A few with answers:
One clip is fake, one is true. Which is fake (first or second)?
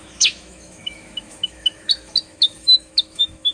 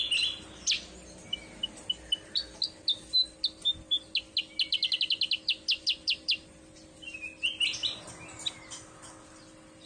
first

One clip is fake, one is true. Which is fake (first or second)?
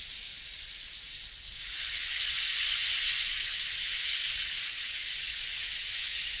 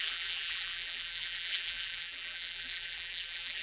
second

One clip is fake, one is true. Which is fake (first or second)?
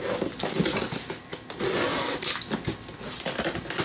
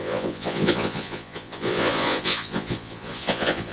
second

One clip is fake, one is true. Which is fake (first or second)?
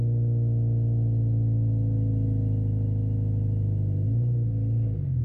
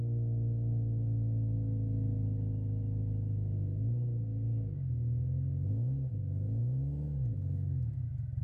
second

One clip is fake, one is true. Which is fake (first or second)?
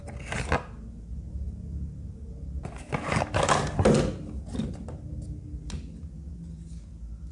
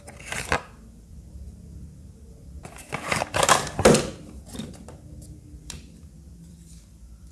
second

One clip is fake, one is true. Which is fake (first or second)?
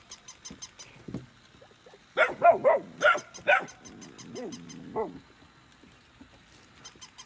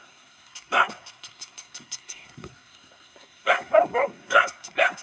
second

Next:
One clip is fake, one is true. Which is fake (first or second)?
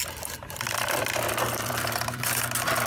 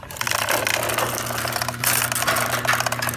first